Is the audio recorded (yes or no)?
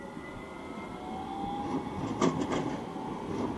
yes